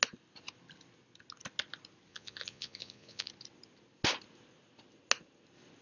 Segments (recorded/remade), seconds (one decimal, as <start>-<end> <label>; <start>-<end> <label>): 0.0-2.1 recorded; 2.1-3.3 remade; 3.3-5.8 recorded